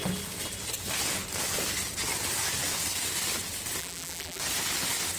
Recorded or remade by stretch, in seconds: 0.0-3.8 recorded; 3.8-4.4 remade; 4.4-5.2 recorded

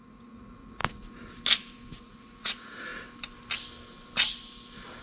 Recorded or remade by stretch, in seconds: 0.0-0.8 remade; 0.8-2.0 recorded; 2.0-2.9 remade; 2.9-5.0 recorded

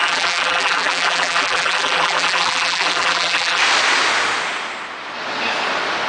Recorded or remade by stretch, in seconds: 0.0-3.6 remade; 3.6-6.1 recorded

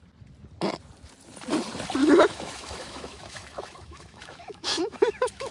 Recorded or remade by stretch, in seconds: 0.0-2.0 recorded; 2.0-5.5 remade

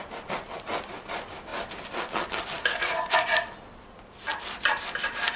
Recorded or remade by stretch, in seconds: 0.0-5.4 recorded

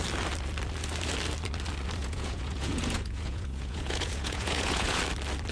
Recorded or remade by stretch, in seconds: 0.0-2.0 recorded; 2.0-5.0 remade; 5.0-5.5 recorded

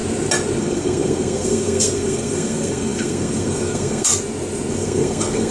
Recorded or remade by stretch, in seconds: 0.0-0.6 recorded; 0.6-4.1 remade; 4.1-4.7 recorded; 4.7-5.5 remade

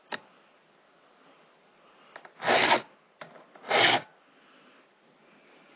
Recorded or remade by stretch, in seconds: 0.0-5.8 recorded